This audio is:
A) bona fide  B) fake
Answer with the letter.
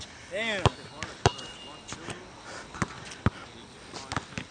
A